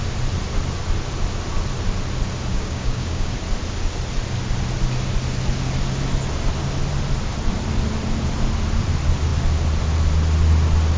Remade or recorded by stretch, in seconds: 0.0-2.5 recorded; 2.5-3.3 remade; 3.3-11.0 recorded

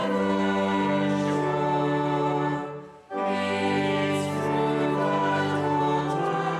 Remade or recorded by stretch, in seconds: 0.0-6.6 recorded

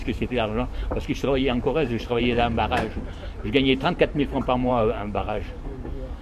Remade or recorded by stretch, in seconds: 0.0-2.2 remade; 2.2-4.7 recorded; 4.7-6.2 remade

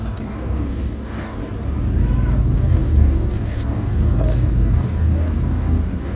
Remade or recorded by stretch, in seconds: 0.0-1.4 remade; 1.4-2.4 recorded; 2.4-6.2 remade

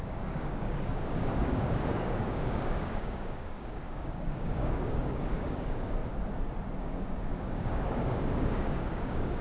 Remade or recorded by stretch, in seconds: 0.0-6.0 remade; 6.0-6.8 recorded; 6.8-9.4 remade

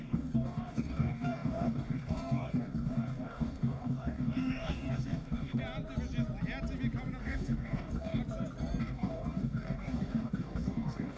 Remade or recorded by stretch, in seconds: 0.0-5.6 remade; 5.6-7.2 recorded; 7.2-8.2 remade; 8.2-8.8 recorded; 8.8-11.2 remade

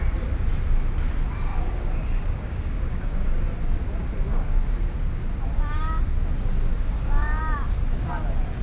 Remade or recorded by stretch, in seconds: 0.0-1.5 recorded; 1.5-3.4 remade; 3.4-4.3 recorded; 4.3-5.2 remade; 5.2-6.7 recorded; 6.7-7.4 remade; 7.4-8.6 recorded

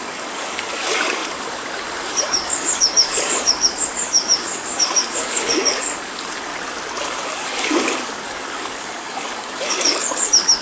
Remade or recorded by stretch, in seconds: 0.0-6.5 remade; 6.5-7.0 recorded; 7.0-10.6 remade